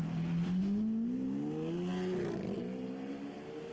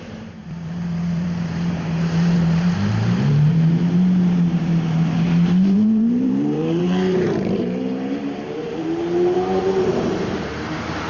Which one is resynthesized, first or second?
second